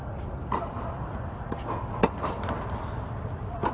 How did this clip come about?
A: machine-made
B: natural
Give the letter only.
B